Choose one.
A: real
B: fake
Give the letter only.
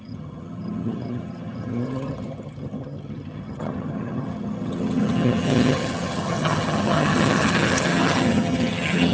B